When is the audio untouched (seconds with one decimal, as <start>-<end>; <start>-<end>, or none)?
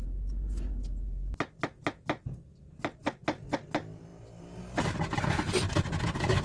0.0-6.4